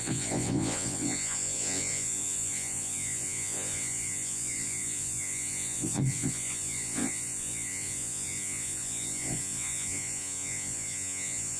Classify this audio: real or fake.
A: fake